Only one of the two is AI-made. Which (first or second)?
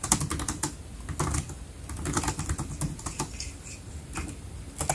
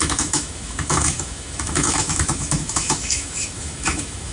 second